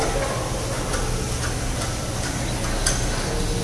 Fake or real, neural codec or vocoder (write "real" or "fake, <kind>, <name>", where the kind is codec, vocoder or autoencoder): real